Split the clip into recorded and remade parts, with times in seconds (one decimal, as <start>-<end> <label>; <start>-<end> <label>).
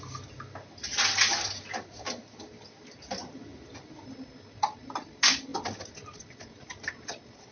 0.0-7.5 recorded